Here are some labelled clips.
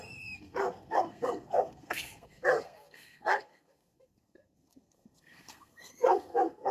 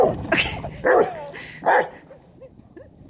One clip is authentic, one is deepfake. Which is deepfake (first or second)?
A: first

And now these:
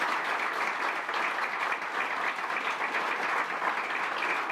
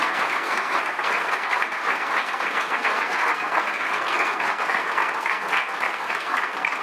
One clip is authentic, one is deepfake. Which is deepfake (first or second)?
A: second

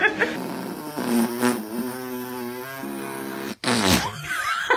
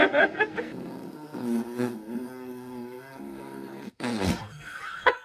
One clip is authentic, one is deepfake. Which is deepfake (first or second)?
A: second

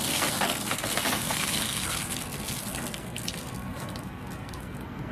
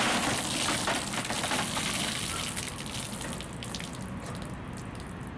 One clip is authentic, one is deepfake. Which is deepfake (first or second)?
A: first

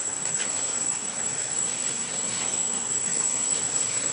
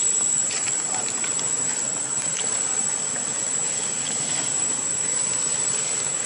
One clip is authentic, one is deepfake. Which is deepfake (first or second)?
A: first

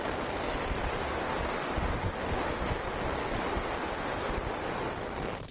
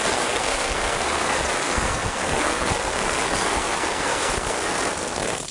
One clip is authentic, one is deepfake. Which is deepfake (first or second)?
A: second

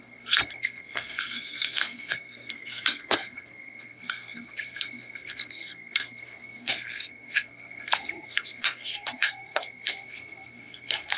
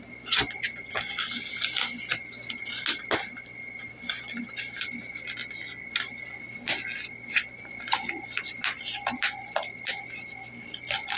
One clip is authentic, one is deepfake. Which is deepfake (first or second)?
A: first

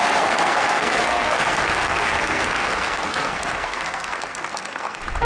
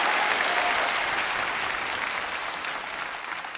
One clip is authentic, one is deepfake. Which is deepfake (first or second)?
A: first